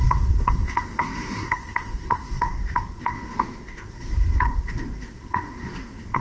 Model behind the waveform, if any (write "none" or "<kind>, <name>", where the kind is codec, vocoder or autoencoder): codec, SNAC